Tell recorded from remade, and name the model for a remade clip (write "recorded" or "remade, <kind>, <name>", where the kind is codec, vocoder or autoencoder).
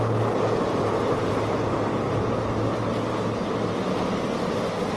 recorded